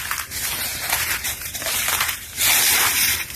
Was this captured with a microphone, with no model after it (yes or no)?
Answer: no